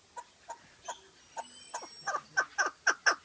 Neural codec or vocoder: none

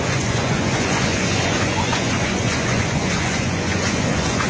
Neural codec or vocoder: vocoder, Vocos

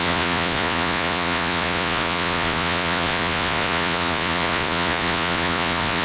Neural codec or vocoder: vocoder, Vocos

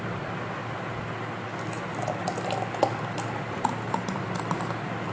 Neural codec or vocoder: none